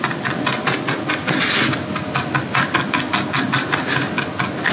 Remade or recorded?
recorded